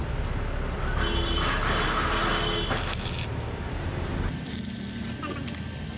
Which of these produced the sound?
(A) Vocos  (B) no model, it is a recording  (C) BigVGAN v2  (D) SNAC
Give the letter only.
B